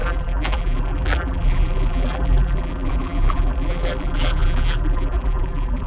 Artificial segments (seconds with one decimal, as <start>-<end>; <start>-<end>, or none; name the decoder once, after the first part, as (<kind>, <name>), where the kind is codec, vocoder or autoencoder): 0.0-5.9 (vocoder, BigVGAN v2)